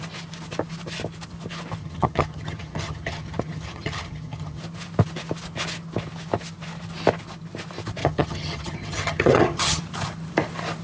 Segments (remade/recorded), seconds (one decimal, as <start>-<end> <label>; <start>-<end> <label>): 0.0-1.8 recorded; 1.8-4.6 remade; 4.6-8.0 recorded; 8.0-9.8 remade; 9.8-10.8 recorded